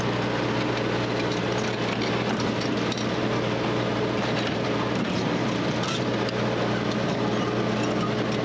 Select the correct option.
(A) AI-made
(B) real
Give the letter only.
B